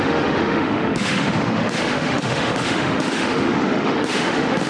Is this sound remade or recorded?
remade